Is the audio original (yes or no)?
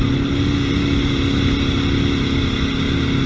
yes